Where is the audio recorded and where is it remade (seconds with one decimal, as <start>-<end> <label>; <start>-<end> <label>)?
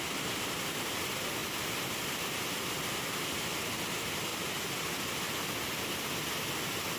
0.0-4.3 recorded; 4.3-5.7 remade; 5.7-7.0 recorded